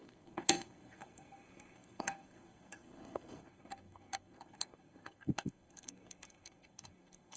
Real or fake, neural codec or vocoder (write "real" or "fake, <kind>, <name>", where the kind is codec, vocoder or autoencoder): fake, codec, SNAC